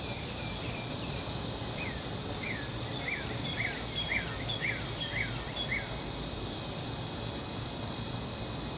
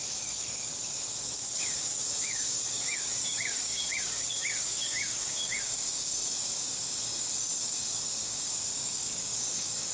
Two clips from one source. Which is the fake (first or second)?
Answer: second